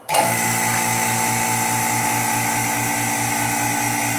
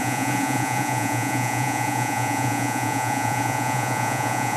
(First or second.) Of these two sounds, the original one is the first